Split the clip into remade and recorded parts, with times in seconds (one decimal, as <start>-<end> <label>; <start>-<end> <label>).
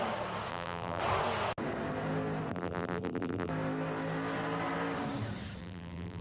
0.0-0.5 recorded; 0.5-1.0 remade; 1.0-2.5 recorded; 2.5-3.5 remade; 3.5-5.6 recorded; 5.6-6.2 remade